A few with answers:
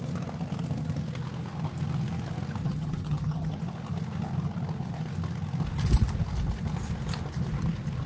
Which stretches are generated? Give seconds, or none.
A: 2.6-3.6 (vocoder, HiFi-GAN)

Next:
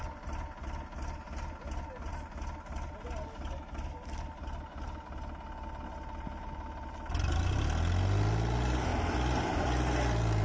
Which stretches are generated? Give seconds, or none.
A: none

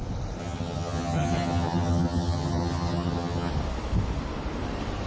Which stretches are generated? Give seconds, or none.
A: 0.4-3.5 (vocoder, HiFi-GAN)

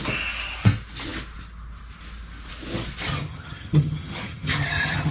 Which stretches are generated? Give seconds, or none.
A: 3.1-5.1 (vocoder, HiFi-GAN)

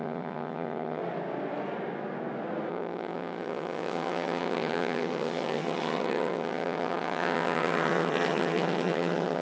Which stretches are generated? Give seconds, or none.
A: 0.0-1.0 (vocoder, HiFi-GAN); 2.7-9.4

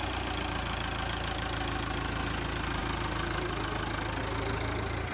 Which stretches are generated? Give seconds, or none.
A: none